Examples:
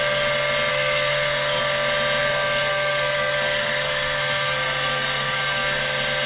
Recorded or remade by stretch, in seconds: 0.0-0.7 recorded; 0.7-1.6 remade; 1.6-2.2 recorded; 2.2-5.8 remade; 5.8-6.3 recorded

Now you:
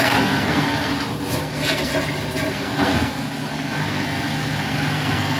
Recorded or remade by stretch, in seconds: 0.0-0.9 remade; 0.9-1.4 recorded; 1.4-1.9 remade; 1.9-2.5 recorded; 2.5-5.4 remade

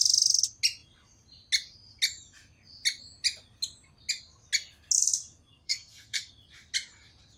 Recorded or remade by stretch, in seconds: 0.0-5.5 recorded; 5.5-6.3 remade; 6.3-7.4 recorded

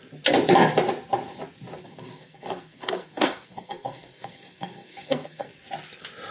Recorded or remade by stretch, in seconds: 0.0-1.8 recorded; 1.8-5.5 remade; 5.5-6.3 recorded

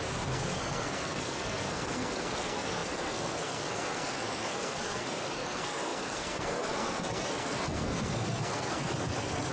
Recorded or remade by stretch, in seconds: 0.0-9.5 remade

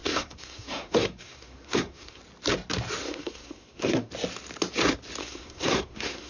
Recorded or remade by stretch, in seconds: 0.0-2.2 remade; 2.2-3.0 recorded; 3.0-4.1 remade; 4.1-5.2 recorded; 5.2-6.3 remade

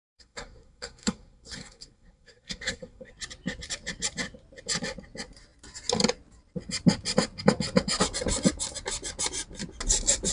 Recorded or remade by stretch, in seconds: 0.0-3.1 remade; 3.1-10.3 recorded